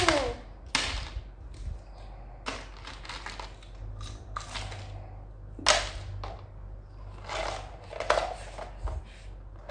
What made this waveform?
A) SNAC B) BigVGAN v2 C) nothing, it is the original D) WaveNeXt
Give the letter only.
C